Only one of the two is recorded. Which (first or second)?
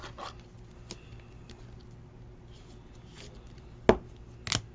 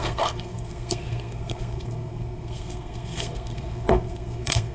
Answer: first